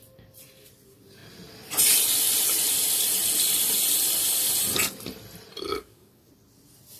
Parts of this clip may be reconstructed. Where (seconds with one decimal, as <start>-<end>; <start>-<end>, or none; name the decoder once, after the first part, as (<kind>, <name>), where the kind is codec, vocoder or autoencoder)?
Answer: 5.7-6.3 (codec, DAC)